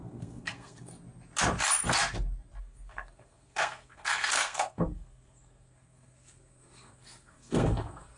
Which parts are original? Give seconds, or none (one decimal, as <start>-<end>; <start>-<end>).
0.9-2.6